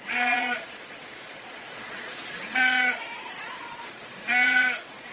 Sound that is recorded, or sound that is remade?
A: remade